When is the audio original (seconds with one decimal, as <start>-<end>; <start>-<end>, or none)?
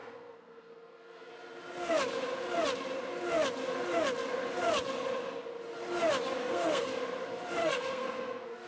1.3-6.4; 7.0-7.6